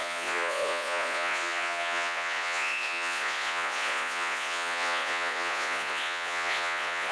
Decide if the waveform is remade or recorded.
remade